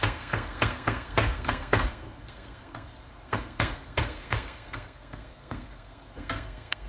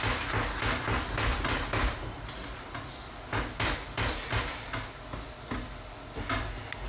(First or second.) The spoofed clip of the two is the first